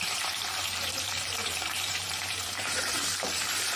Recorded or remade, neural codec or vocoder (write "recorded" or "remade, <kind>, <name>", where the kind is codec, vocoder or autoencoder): remade, vocoder, BigVGAN v2